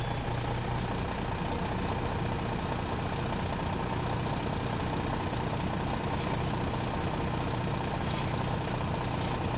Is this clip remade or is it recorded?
recorded